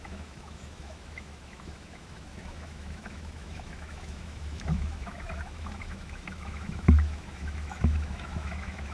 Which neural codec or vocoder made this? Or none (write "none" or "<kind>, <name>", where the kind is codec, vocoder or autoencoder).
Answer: autoencoder, DAC-VAE